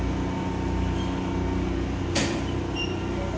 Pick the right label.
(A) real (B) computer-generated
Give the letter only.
A